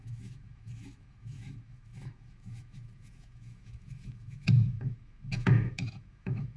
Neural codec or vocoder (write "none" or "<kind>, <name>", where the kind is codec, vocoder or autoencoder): autoencoder, DAC-VAE